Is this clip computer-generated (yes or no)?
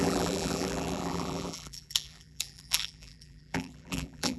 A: yes